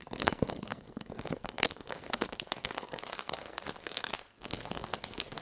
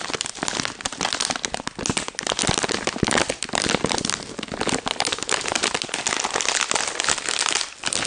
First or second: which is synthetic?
first